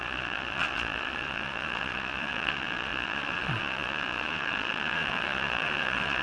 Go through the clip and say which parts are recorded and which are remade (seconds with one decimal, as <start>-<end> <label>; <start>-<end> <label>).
0.0-6.2 remade

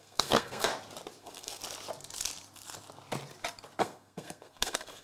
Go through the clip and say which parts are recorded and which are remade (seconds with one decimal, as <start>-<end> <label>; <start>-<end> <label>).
0.0-0.7 remade; 0.7-1.2 recorded; 1.2-1.6 remade; 1.6-3.8 recorded; 3.8-5.0 remade

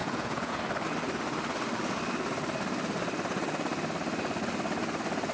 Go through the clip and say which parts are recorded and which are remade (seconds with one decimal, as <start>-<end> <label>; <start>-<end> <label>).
0.0-0.6 remade; 0.6-5.3 recorded

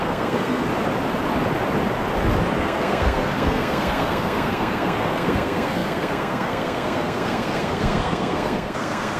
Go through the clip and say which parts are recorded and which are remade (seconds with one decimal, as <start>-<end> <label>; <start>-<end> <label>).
0.0-0.7 remade; 0.7-2.6 recorded; 2.6-9.2 remade

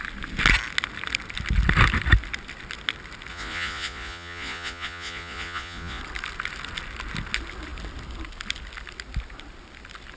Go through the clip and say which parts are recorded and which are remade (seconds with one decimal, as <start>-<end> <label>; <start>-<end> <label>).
0.0-3.3 recorded; 3.3-6.0 remade; 6.0-10.2 recorded

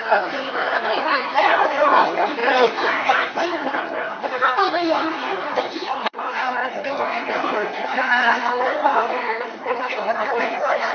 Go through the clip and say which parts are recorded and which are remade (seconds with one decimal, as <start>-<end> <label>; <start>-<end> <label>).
0.0-10.9 remade